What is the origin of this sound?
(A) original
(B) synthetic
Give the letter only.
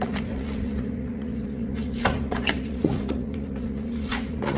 B